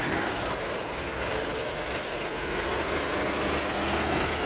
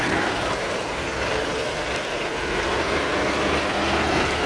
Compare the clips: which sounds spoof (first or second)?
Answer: second